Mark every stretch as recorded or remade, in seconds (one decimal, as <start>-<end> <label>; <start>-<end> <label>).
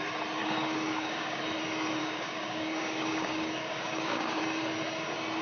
0.0-0.4 recorded; 0.4-1.4 remade; 1.4-2.0 recorded; 2.0-4.4 remade; 4.4-5.4 recorded